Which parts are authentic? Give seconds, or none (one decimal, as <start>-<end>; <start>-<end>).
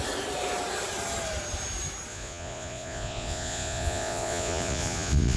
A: 0.0-2.1